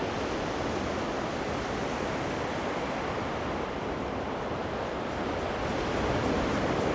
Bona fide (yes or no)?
yes